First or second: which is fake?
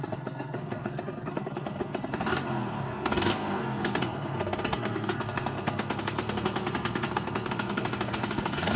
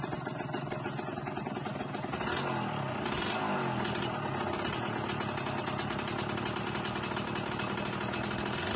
first